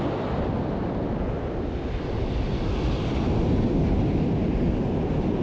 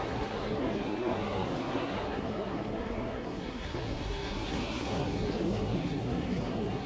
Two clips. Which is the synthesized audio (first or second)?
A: second